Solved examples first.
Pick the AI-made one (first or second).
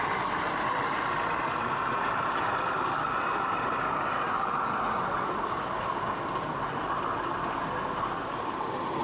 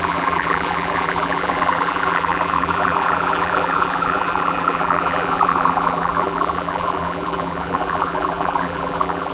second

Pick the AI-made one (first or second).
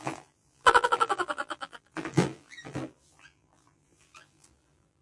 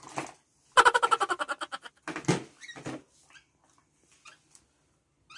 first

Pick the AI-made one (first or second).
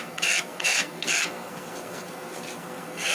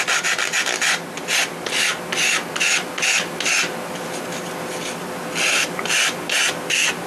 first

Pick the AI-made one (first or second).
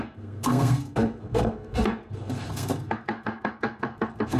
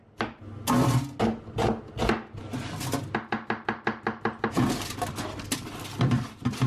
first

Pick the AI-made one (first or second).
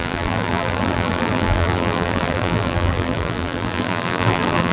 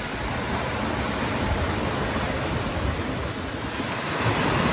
first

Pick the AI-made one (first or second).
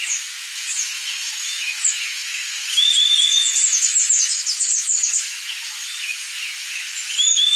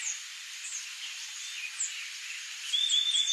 first